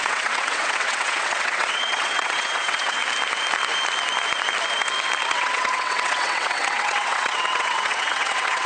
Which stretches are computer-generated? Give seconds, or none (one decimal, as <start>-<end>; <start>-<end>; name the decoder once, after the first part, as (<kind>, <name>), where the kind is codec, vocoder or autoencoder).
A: 0.0-3.0 (vocoder, WaveNeXt); 5.3-8.7